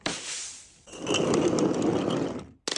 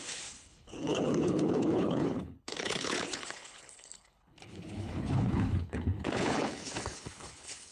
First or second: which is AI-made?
second